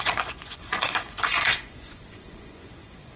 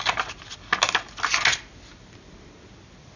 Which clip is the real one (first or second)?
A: second